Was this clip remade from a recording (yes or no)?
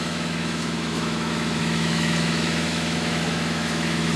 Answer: yes